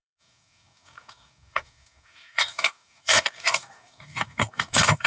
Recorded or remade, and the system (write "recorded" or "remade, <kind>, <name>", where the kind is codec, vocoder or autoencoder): remade, codec, DAC